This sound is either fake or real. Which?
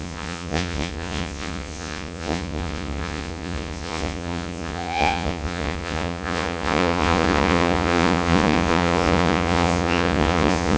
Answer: fake